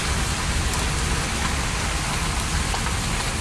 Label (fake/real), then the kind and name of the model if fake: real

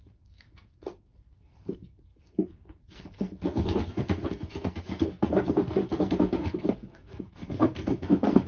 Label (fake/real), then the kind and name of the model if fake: fake, codec, SNAC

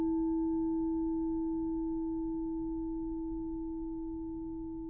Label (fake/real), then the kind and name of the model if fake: real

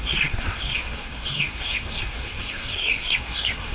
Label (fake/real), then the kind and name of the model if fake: fake, codec, SNAC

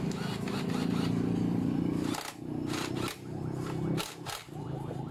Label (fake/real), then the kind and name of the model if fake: real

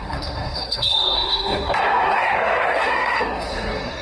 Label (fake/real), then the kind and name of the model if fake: fake, codec, SNAC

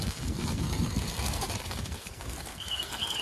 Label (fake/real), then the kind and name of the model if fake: fake, codec, SNAC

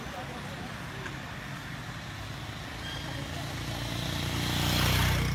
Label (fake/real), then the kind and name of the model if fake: real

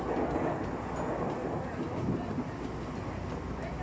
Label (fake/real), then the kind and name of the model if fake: real